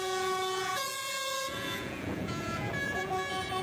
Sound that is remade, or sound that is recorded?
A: remade